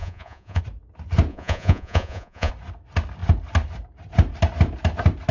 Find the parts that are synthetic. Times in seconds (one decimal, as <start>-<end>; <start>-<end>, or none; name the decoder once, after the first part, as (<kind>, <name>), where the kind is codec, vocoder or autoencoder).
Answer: 0.0-0.6 (vocoder, Vocos); 1.3-2.5